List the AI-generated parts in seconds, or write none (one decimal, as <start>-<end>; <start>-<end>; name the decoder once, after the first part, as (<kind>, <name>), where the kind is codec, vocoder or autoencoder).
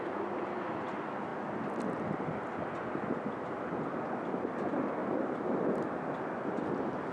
none